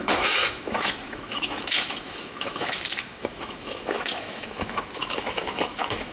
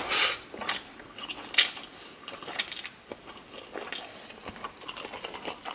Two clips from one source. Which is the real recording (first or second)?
second